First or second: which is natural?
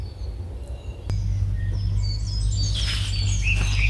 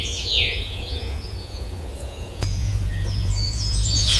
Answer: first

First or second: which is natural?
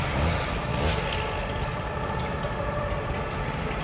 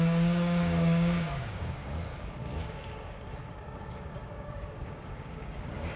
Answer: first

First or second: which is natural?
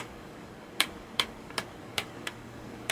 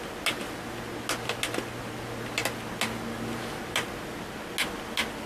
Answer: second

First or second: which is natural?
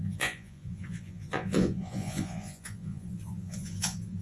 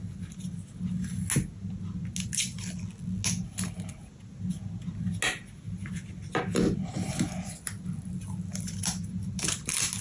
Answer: second